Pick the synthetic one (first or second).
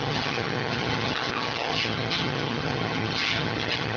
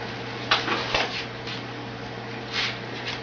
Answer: first